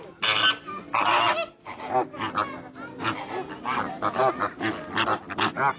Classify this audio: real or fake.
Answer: real